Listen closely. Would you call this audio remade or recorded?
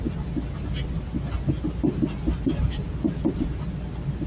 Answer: recorded